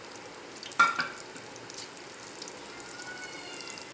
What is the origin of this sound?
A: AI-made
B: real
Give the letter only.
B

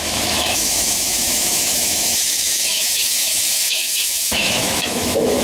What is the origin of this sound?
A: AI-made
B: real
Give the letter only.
A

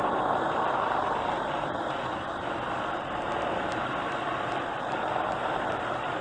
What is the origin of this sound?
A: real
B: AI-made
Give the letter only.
A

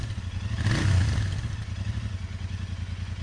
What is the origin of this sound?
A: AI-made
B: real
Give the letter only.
B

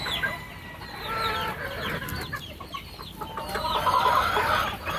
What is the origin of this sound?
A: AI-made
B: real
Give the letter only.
B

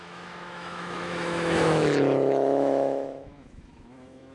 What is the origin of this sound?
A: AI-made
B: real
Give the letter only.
A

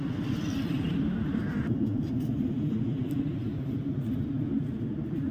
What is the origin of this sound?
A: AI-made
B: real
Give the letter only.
B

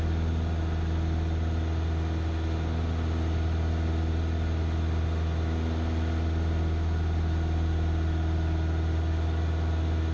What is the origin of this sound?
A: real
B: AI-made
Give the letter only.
A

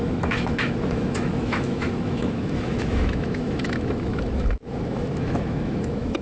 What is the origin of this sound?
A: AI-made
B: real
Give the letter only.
A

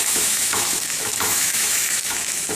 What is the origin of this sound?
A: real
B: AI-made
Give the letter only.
B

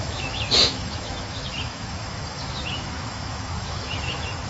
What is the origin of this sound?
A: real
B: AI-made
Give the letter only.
B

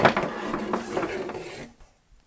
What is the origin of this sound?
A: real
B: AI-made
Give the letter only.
A